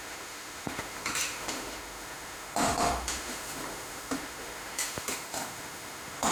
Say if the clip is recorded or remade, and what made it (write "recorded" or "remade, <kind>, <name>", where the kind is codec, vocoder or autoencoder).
remade, autoencoder, DAC-VAE